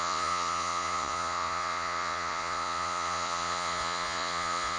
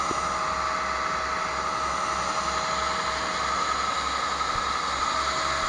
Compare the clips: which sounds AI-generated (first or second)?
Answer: first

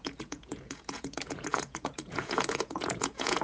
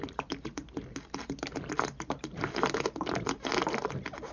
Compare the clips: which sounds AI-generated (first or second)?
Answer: first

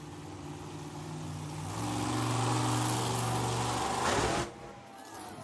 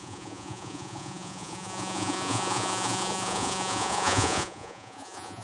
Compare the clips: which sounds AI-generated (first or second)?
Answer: second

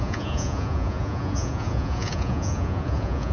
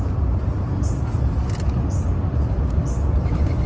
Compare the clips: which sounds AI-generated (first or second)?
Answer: first